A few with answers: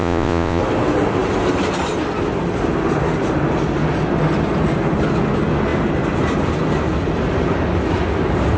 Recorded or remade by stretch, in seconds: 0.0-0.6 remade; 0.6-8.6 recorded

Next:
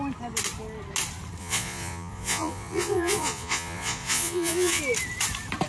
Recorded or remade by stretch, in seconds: 0.0-1.4 recorded; 1.4-4.8 remade; 4.8-5.7 recorded

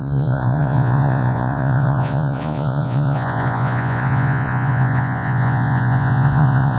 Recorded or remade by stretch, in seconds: 0.0-6.8 remade

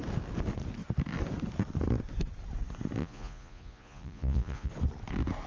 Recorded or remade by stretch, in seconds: 0.0-3.0 recorded; 3.0-4.7 remade; 4.7-5.5 recorded

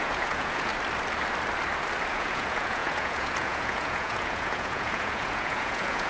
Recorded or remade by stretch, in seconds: 0.0-0.7 remade; 0.7-2.1 recorded; 2.1-6.1 remade

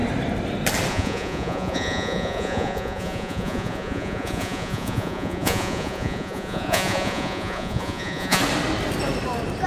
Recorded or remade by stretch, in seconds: 0.0-0.9 recorded; 0.9-8.4 remade; 8.4-9.7 recorded